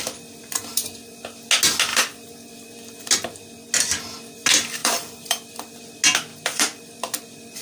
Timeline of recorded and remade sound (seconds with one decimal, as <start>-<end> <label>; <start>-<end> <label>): 0.0-1.9 recorded; 1.9-3.1 remade; 3.1-4.8 recorded; 4.8-5.8 remade; 5.8-6.3 recorded; 6.3-7.0 remade; 7.0-7.6 recorded